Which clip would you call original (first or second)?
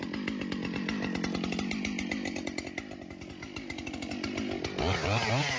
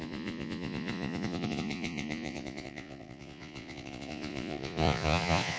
first